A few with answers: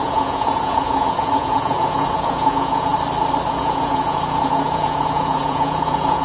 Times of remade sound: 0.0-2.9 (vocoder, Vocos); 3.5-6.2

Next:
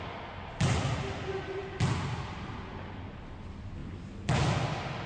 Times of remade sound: none

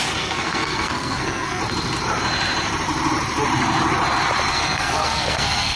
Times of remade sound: 0.0-1.6 (codec, SNAC); 4.5-5.8

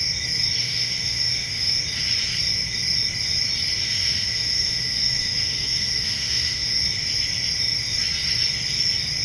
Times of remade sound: 0.6-1.8 (autoencoder, DAC-VAE); 3.8-6.8